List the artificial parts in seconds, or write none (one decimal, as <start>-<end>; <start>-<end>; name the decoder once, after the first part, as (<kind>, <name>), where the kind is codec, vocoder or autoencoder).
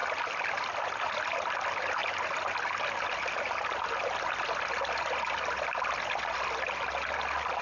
none